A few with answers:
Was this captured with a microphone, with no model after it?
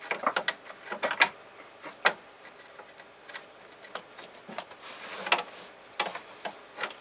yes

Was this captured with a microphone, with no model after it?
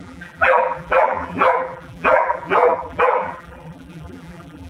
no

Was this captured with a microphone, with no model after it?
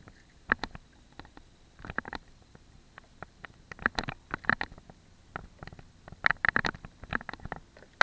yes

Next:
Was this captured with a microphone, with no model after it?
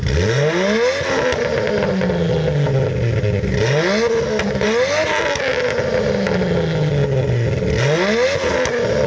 yes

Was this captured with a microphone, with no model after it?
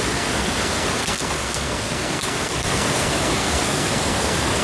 no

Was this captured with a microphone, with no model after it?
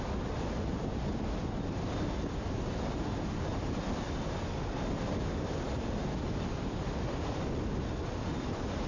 yes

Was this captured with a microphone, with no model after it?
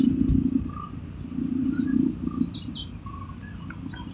yes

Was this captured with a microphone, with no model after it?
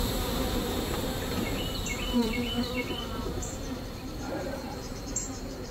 no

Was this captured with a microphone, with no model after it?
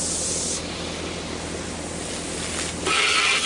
yes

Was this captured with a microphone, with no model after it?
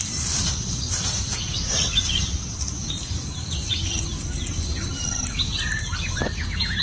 no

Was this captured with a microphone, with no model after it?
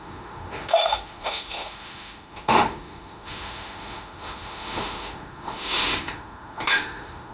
no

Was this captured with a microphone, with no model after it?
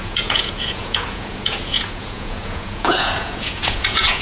no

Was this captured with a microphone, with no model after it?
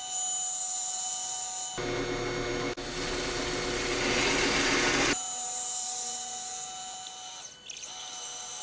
yes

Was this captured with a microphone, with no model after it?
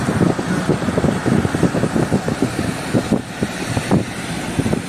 no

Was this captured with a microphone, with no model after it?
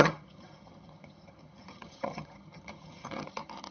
no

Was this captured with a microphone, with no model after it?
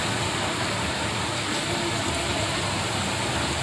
yes